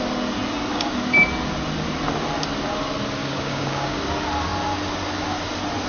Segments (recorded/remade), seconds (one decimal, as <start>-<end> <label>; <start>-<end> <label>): 0.0-3.2 recorded; 3.2-4.0 remade; 4.0-5.9 recorded